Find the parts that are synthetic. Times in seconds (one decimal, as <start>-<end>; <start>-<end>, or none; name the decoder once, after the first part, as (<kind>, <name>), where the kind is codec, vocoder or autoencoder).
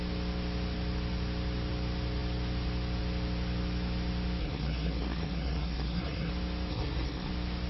4.4-6.3 (codec, SNAC); 6.7-7.3